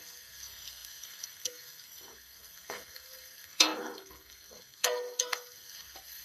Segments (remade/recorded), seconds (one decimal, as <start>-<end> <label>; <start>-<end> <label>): 0.0-6.2 remade